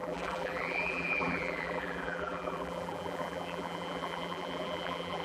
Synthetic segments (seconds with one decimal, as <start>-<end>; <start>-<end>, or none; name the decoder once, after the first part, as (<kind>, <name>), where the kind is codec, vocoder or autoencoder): 0.0-5.2 (vocoder, BigVGAN v2)

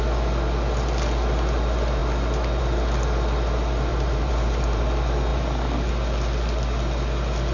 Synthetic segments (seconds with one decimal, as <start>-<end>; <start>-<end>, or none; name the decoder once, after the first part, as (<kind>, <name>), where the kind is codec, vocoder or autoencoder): 3.9-4.8 (vocoder, BigVGAN v2)